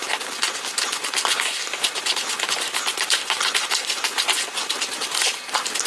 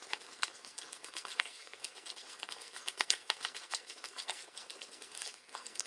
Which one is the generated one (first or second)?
second